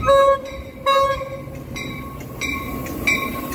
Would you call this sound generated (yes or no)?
no